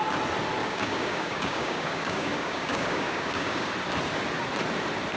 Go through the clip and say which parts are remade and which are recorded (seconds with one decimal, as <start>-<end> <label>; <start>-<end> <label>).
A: 0.0-0.6 recorded; 0.6-3.7 remade; 3.7-5.2 recorded